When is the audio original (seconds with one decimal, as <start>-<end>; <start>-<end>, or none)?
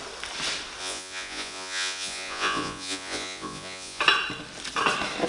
0.0-0.8; 4.0-5.3